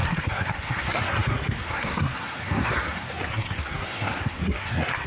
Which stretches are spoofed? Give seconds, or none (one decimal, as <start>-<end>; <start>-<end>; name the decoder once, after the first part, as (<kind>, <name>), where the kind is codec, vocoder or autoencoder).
0.0-5.1 (codec, SNAC)